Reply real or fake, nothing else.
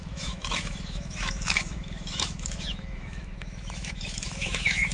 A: fake